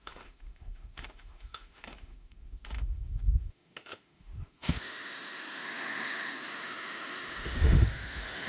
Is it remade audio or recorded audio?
remade